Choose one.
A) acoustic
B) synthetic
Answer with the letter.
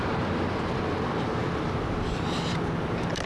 A